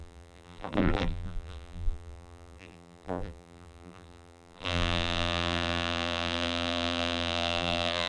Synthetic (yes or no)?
yes